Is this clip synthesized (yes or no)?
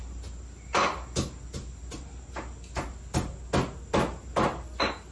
no